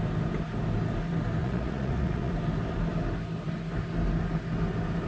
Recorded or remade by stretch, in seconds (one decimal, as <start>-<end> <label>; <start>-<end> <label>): 0.0-1.4 recorded; 1.4-2.3 remade; 2.3-5.1 recorded